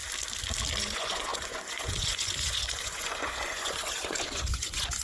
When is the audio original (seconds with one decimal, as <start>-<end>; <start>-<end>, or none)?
0.0-0.8